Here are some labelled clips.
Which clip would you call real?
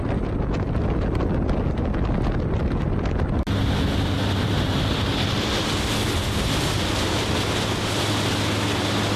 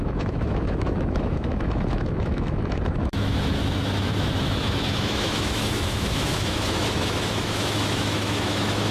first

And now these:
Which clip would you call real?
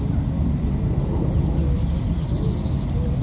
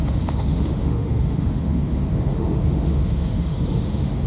first